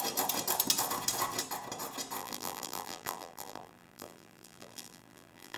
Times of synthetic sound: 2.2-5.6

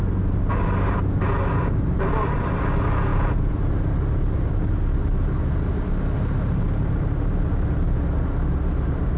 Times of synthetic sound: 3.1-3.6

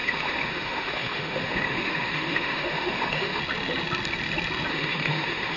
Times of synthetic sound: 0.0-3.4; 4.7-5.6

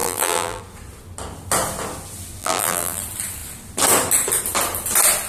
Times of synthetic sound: 0.0-0.6; 2.4-3.0